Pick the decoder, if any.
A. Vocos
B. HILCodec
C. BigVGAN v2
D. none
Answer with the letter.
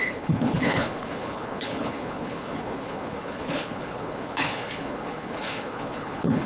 B